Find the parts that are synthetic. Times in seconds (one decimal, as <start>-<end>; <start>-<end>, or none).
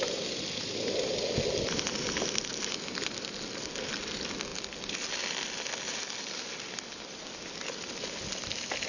none